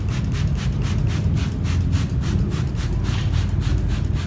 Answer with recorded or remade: recorded